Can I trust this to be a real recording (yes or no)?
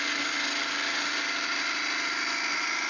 yes